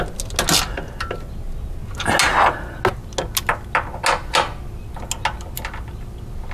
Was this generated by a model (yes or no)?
no